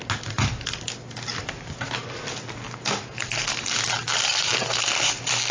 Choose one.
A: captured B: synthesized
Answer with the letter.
A